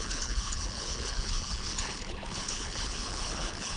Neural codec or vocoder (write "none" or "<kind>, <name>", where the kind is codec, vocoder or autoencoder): codec, HILCodec